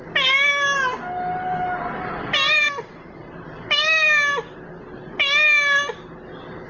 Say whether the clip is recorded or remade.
recorded